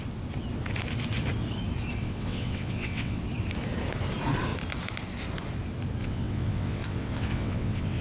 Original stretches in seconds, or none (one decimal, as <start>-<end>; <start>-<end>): 0.0-2.0; 3.2-6.0